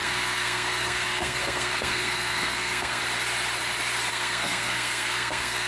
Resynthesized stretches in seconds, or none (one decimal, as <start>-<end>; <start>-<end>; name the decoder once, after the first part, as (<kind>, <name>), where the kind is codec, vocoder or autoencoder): 0.0-3.0 (codec, SNAC); 4.1-5.7